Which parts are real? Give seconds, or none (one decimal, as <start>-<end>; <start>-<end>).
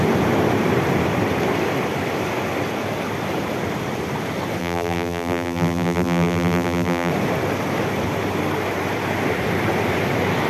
0.0-4.6; 7.1-10.5